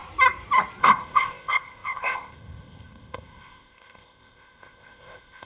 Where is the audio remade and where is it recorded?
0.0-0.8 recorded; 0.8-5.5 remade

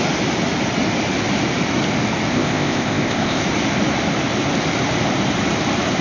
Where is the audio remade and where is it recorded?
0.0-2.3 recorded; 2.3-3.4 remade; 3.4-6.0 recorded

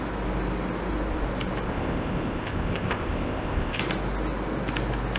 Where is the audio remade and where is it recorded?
0.0-1.7 recorded; 1.7-3.8 remade; 3.8-5.2 recorded

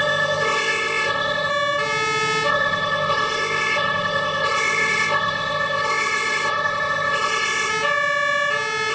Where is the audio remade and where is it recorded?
0.0-1.5 remade; 1.5-2.5 recorded; 2.5-7.7 remade; 7.7-8.9 recorded